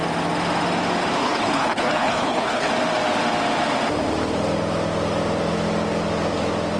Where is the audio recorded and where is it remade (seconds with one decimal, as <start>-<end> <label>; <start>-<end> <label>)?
0.0-1.2 recorded; 1.2-2.7 remade; 2.7-6.8 recorded